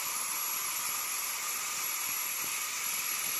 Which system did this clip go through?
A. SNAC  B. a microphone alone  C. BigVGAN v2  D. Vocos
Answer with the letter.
B